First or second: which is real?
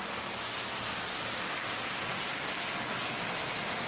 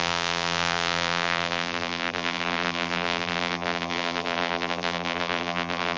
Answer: first